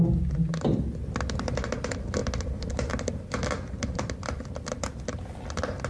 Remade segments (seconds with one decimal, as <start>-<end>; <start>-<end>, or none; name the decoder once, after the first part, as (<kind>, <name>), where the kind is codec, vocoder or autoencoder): none